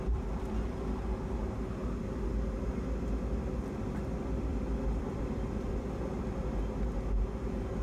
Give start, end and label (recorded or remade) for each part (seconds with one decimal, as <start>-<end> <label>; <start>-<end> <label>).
0.0-4.5 recorded; 4.5-6.4 remade; 6.4-7.8 recorded